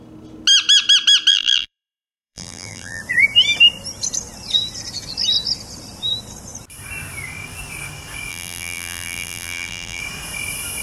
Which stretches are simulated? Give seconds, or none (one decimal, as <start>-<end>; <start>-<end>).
1.3-3.0; 8.3-10.0